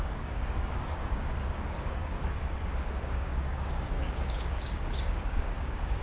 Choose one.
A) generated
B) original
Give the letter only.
A